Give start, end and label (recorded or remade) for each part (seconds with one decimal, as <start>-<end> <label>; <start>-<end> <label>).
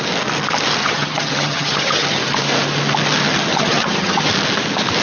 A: 0.0-0.8 recorded; 0.8-2.2 remade; 2.2-3.5 recorded; 3.5-4.3 remade; 4.3-5.0 recorded